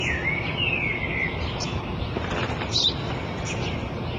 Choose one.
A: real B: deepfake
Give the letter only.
A